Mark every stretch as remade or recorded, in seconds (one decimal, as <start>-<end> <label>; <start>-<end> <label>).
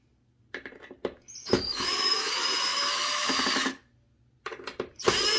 0.0-1.4 recorded; 1.4-2.3 remade; 2.3-2.7 recorded; 2.7-3.4 remade; 3.4-5.4 recorded